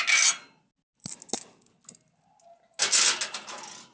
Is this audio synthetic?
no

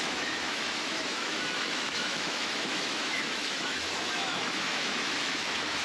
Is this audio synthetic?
yes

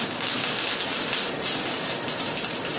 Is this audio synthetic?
no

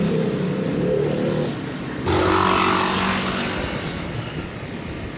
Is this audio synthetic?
no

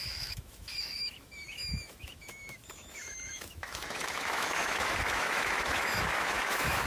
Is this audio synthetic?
yes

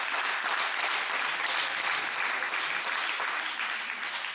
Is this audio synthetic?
no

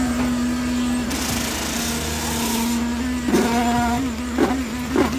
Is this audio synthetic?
no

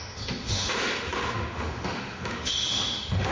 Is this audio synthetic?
yes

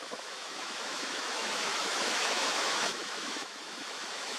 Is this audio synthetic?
yes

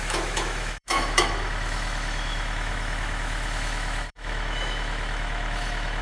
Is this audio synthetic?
yes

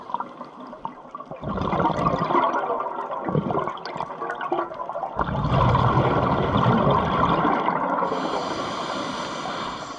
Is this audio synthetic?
no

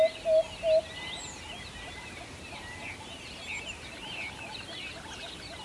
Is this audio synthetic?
no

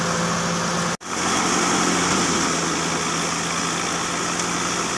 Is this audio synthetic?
no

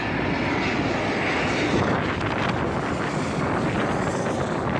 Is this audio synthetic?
no